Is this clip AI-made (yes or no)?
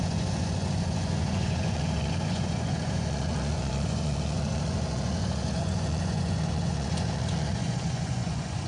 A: yes